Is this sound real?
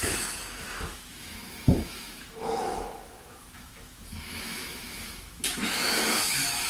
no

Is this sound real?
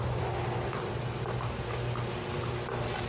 yes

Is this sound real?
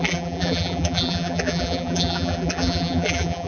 no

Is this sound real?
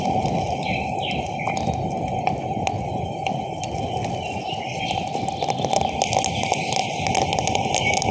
yes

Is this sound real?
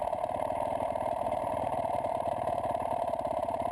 no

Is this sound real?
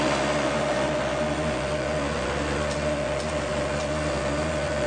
no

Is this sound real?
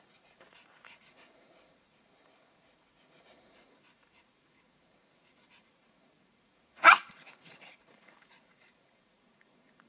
no